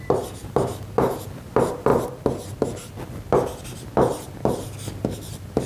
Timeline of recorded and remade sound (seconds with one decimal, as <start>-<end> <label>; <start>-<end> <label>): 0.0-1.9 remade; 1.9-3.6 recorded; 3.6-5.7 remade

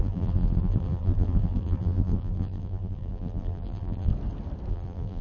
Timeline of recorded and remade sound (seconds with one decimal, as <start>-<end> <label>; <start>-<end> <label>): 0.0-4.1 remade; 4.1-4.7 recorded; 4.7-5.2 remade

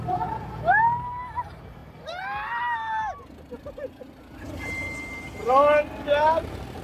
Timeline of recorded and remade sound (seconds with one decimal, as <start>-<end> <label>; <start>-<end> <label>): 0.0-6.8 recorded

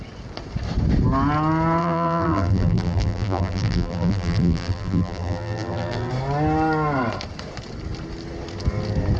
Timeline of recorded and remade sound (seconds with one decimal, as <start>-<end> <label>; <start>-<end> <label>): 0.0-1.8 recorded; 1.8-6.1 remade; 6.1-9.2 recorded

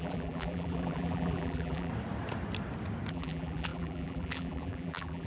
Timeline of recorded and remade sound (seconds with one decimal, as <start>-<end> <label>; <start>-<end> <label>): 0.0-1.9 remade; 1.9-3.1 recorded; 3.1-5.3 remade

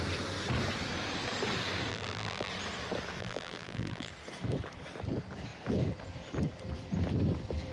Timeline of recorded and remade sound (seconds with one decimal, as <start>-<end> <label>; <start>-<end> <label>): 0.0-1.9 recorded; 1.9-2.5 remade; 2.5-3.2 recorded; 3.2-4.1 remade; 4.1-7.7 recorded

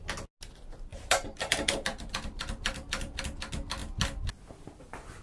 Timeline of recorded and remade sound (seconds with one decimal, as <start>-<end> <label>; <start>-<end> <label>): 0.0-0.9 recorded; 0.9-3.2 remade; 3.2-5.2 recorded

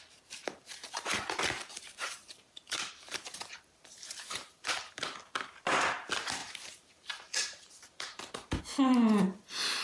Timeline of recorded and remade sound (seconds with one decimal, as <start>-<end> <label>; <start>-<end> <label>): 0.0-0.4 recorded; 0.4-5.2 remade; 5.2-6.4 recorded; 6.4-8.6 remade; 8.6-9.8 recorded